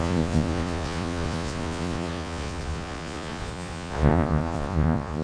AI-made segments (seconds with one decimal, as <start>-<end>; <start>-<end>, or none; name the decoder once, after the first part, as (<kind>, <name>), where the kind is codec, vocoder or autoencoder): 0.0-5.2 (vocoder, Vocos)